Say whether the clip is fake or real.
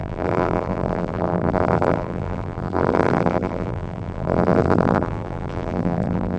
fake